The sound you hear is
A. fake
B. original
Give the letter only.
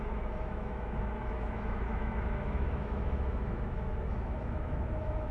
A